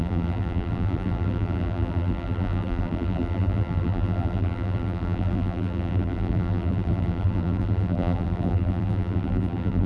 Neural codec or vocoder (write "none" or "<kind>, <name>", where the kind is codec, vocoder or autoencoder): vocoder, BigVGAN v2